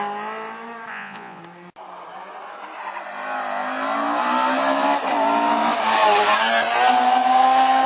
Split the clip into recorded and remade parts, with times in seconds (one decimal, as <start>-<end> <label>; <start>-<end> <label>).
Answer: 0.0-0.9 recorded; 0.9-1.4 remade; 1.4-7.9 recorded